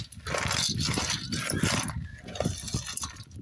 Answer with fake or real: real